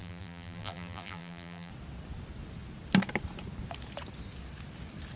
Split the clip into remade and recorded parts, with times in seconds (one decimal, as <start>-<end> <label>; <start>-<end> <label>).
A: 0.0-1.7 remade; 1.7-5.2 recorded